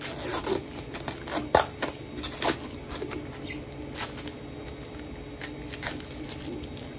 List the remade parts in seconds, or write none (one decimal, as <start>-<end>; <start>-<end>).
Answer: none